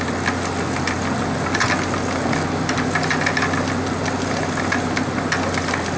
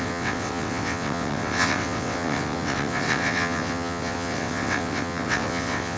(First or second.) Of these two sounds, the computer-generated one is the second